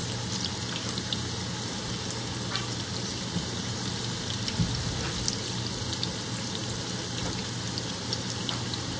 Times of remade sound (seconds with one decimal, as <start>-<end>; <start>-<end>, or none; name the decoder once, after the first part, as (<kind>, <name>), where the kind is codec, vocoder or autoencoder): none